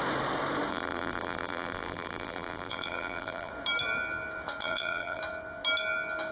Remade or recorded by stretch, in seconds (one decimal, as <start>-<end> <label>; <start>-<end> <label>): 0.0-0.7 recorded; 0.7-3.5 remade; 3.5-4.6 recorded; 4.6-5.2 remade; 5.2-6.3 recorded